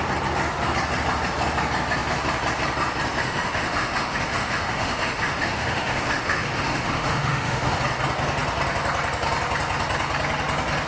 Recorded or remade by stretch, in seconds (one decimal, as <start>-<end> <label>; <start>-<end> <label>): 0.0-3.2 recorded; 3.2-7.8 remade; 7.8-10.9 recorded